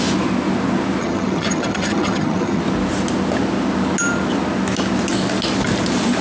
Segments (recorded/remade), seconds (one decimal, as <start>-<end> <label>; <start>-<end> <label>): 0.0-1.0 recorded; 1.0-2.6 remade; 2.6-6.2 recorded